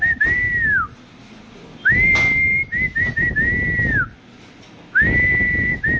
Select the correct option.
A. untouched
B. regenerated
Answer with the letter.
A